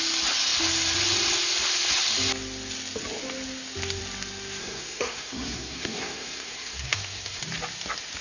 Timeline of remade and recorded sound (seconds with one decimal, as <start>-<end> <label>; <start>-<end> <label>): 0.0-4.6 recorded; 4.6-7.4 remade; 7.4-8.2 recorded